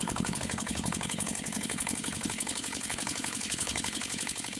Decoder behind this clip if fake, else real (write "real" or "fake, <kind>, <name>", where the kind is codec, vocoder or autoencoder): fake, codec, HILCodec